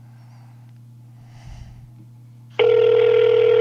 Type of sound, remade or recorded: recorded